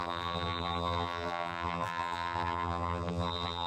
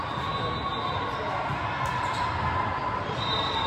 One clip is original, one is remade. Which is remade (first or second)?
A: first